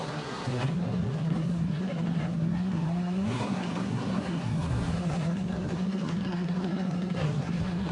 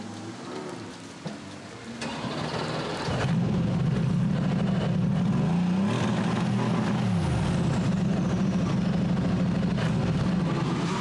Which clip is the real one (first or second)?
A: second